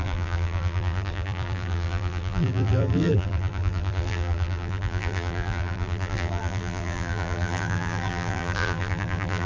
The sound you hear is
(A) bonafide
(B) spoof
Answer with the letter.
B